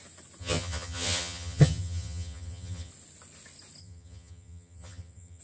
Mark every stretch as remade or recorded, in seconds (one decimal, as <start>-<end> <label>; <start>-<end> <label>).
0.0-0.4 recorded; 0.4-2.9 remade; 2.9-3.8 recorded; 3.8-5.4 remade